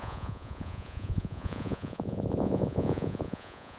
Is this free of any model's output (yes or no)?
no